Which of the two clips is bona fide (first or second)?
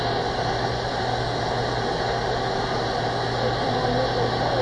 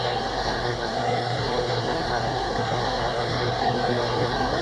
first